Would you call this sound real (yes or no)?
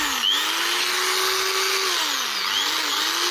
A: yes